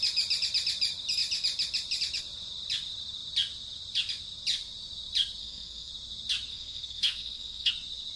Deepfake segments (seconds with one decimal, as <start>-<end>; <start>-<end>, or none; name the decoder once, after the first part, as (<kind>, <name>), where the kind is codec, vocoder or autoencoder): 5.4-5.9 (codec, SNAC); 6.5-7.7